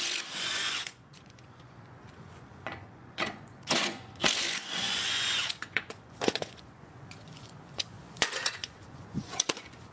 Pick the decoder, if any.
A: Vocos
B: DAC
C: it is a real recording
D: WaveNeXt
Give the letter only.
A